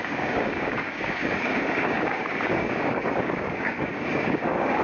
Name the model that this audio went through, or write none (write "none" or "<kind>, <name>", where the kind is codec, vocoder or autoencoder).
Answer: codec, DAC